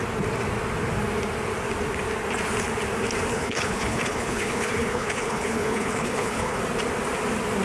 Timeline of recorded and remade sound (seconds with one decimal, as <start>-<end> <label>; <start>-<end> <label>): 0.0-3.3 recorded; 3.3-6.6 remade; 6.6-7.6 recorded